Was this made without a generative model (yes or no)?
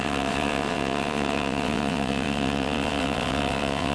no